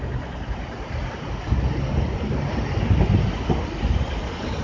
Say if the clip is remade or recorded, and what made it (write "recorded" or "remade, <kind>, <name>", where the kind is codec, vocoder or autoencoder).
recorded